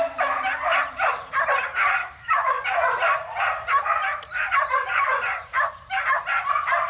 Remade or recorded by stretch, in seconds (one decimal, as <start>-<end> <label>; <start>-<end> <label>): 0.0-2.0 recorded; 2.0-2.6 remade; 2.6-6.9 recorded